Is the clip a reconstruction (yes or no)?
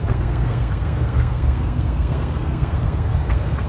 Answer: yes